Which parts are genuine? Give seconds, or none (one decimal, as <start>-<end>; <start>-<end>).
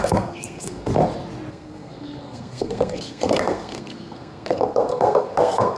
0.9-1.5